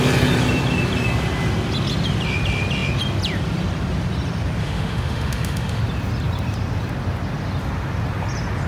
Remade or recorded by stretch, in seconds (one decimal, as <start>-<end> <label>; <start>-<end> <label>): 0.0-4.6 recorded; 4.6-5.8 remade; 5.8-8.7 recorded